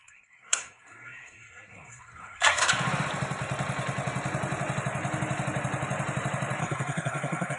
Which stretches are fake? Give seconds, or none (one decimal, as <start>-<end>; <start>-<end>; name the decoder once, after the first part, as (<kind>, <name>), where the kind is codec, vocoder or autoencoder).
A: 0.0-2.7 (codec, SNAC); 6.6-7.6

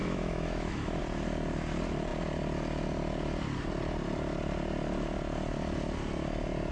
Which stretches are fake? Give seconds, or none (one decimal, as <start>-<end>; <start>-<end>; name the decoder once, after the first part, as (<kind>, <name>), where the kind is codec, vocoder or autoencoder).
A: 0.0-1.0 (autoencoder, DAC-VAE)

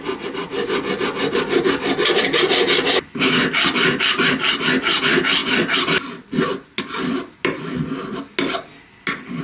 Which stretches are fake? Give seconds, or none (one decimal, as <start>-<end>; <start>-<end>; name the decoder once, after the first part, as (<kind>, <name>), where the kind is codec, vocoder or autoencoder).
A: none